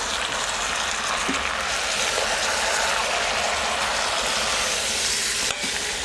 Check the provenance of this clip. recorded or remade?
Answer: recorded